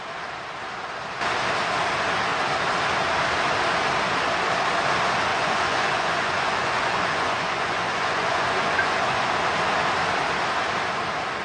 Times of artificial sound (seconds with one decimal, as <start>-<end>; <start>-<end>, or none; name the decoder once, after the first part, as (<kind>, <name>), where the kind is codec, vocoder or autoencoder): 5.3-9.3 (vocoder, Vocos)